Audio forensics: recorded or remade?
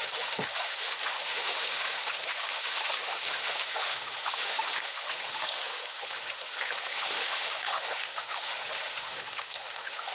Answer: remade